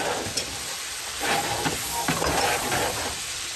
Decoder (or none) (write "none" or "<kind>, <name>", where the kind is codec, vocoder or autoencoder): none